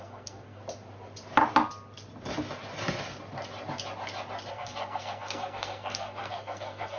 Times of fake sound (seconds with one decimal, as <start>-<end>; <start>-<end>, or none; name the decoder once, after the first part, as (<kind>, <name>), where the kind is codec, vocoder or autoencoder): 0.0-0.6 (codec, SNAC); 4.5-7.0